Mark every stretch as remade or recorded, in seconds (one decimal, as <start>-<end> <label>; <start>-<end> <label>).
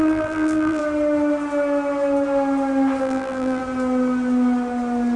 0.0-0.8 remade; 0.8-3.0 recorded; 3.0-3.6 remade; 3.6-5.2 recorded